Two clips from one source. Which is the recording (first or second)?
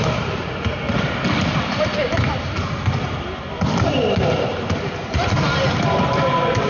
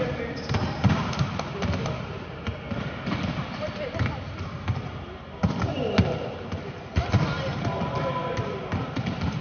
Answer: second